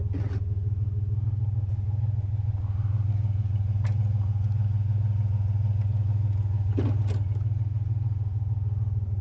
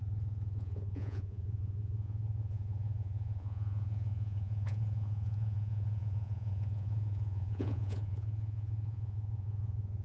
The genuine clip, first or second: first